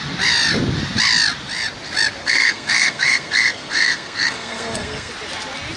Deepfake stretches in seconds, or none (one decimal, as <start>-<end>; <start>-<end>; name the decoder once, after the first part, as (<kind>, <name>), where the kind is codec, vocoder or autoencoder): 2.2-5.1 (codec, SNAC)